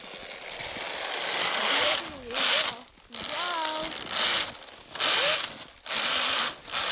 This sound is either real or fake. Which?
real